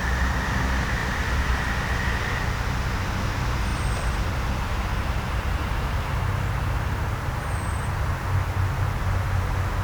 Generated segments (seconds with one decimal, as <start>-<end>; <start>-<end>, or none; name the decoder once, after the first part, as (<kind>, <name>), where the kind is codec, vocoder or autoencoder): 1.0-2.8 (vocoder, BigVGAN v2); 3.7-6.5